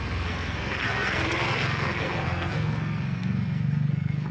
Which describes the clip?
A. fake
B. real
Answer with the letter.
A